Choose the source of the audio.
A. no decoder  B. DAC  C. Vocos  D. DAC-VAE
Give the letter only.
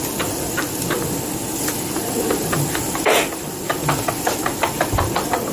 A